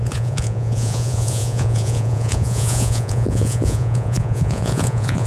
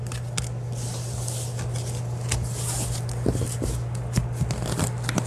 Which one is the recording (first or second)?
second